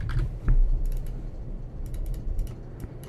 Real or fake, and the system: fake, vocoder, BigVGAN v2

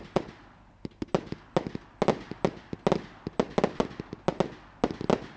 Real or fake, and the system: real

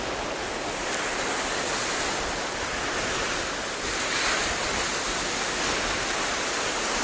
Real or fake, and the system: real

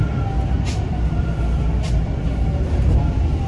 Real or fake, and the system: real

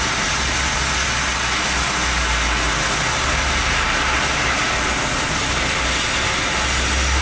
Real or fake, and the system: real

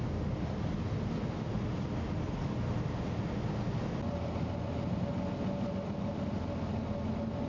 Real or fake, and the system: real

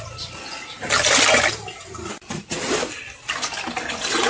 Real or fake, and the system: real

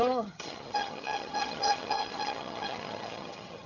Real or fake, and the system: fake, vocoder, HiFi-GAN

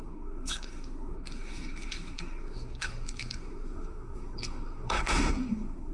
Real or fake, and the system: fake, codec, SNAC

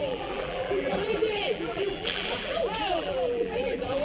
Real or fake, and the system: fake, vocoder, BigVGAN v2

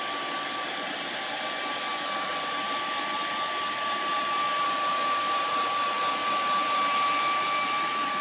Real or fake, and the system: fake, vocoder, BigVGAN v2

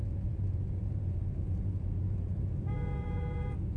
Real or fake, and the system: fake, vocoder, Vocos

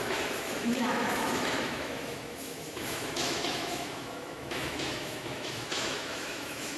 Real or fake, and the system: fake, autoencoder, DAC-VAE